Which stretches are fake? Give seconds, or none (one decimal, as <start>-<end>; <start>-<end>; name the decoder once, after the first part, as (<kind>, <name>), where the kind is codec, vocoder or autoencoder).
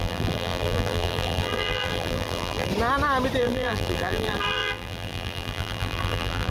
0.0-2.7 (vocoder, BigVGAN v2); 3.4-6.5